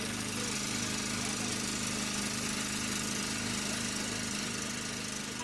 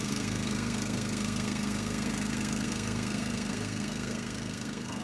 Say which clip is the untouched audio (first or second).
first